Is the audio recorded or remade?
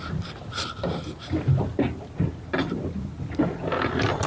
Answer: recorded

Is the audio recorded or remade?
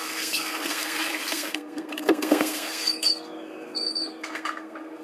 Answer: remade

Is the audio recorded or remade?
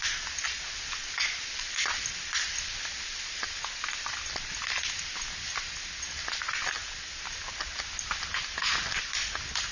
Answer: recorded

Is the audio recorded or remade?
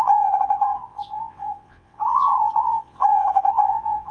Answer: remade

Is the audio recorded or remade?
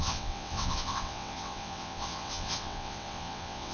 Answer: remade